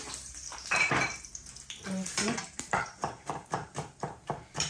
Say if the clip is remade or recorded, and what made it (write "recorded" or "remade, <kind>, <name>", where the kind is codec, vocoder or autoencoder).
remade, vocoder, BigVGAN v2